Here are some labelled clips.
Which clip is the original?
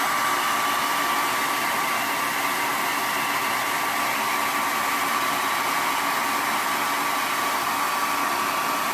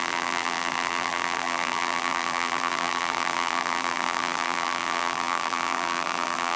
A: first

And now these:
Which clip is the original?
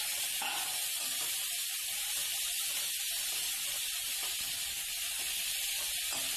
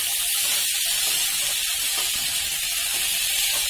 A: second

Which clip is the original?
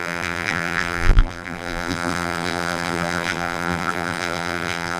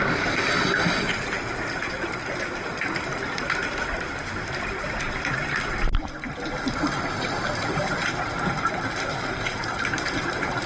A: second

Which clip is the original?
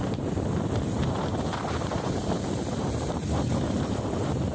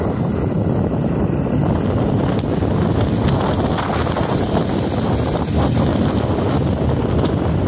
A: second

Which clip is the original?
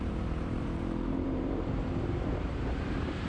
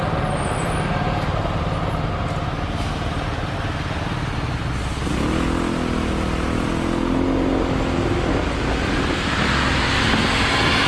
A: second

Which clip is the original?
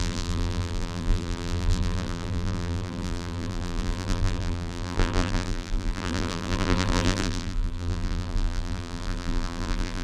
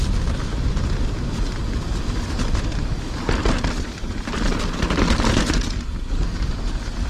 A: second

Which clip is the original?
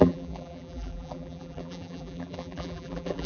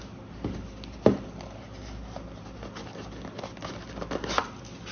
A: second